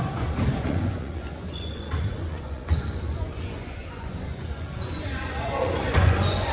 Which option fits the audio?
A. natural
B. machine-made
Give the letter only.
B